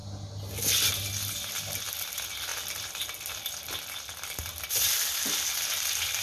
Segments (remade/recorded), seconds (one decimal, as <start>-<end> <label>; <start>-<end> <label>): 0.0-6.2 recorded